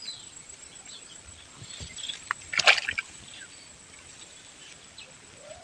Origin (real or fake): real